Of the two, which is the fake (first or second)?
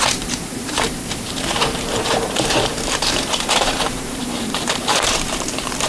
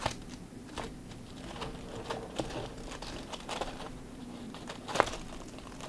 first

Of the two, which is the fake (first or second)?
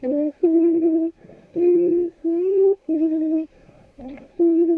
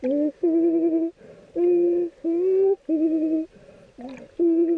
first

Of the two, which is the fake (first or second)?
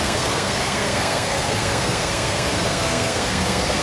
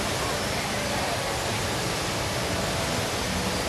first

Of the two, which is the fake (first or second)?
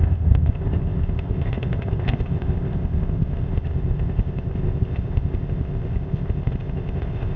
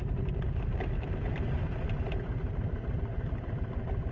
first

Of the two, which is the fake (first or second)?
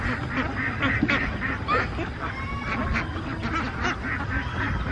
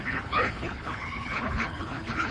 second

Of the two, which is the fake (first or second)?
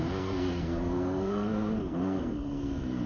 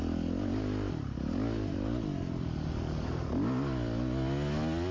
first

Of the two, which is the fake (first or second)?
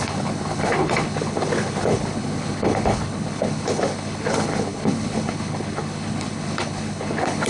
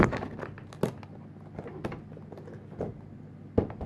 first